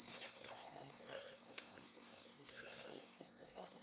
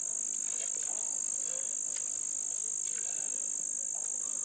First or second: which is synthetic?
first